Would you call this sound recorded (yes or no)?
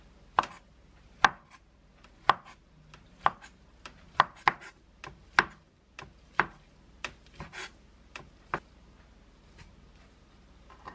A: yes